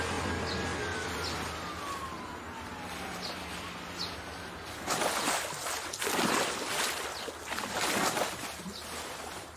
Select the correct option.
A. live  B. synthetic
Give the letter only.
A